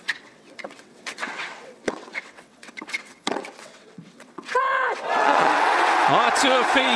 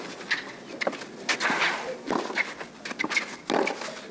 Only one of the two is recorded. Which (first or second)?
second